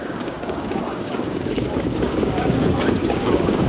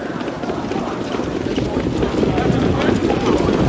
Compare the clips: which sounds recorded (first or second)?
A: second